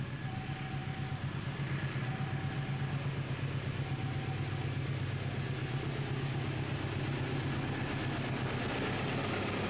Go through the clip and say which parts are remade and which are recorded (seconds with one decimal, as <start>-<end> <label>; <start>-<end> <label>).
0.0-9.7 recorded